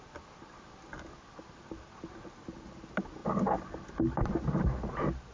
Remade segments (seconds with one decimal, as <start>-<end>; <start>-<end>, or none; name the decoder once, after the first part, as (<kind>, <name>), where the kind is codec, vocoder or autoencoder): none